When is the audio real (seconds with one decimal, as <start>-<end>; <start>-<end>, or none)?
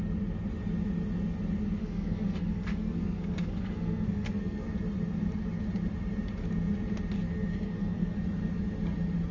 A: 0.0-1.8; 4.7-7.5; 8.1-9.3